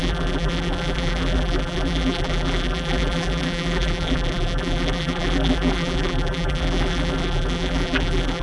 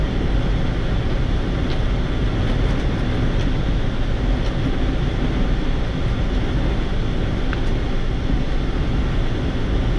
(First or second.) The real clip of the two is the second